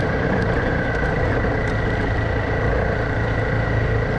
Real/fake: real